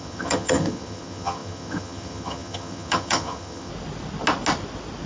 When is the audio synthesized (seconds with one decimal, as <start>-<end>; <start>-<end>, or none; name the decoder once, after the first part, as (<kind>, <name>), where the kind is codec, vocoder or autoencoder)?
0.0-3.7 (vocoder, HiFi-GAN)